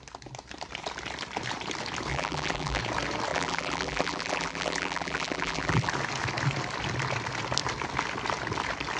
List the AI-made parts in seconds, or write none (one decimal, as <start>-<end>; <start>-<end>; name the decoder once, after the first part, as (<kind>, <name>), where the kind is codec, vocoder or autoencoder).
2.1-2.8 (vocoder, BigVGAN v2); 3.3-5.9